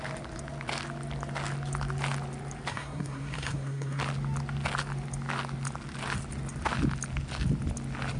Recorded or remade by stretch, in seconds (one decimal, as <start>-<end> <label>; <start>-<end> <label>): 0.0-2.7 recorded; 2.7-4.0 remade; 4.0-8.2 recorded